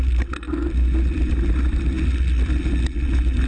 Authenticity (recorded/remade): recorded